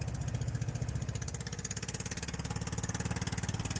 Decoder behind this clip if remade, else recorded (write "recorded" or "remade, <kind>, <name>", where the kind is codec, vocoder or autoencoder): recorded